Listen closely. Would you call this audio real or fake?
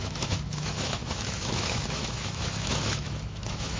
fake